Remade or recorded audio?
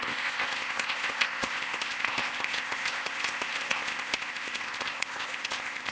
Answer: remade